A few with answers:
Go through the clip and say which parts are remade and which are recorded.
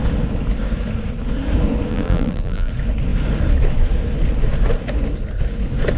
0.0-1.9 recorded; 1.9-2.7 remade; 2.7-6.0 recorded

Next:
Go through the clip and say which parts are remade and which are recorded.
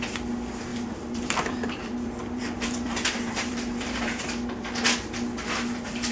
0.0-0.7 recorded; 0.7-4.2 remade; 4.2-6.1 recorded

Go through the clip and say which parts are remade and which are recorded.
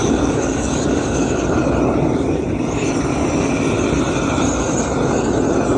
0.0-1.4 remade; 1.4-5.8 recorded